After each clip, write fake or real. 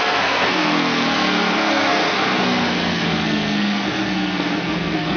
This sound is fake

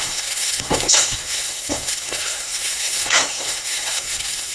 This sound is fake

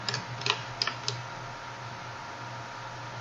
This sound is real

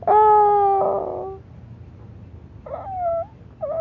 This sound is real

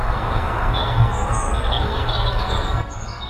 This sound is fake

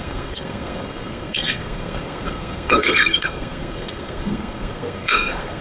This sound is fake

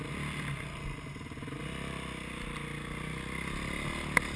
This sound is real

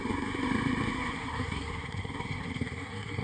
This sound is fake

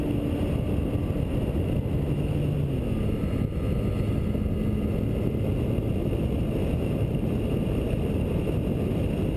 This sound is real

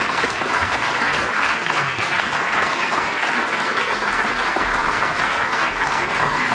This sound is fake